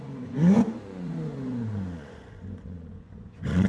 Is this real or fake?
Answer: fake